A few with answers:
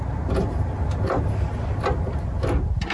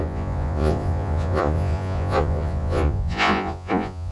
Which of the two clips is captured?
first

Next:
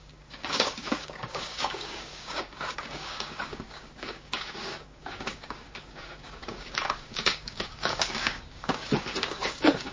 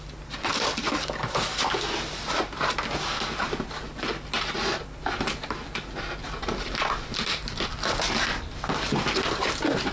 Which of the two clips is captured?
second